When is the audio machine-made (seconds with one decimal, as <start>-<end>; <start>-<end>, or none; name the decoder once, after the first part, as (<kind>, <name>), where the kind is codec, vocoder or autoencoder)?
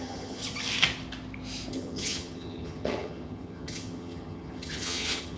0.0-0.4 (vocoder, HiFi-GAN); 1.7-5.4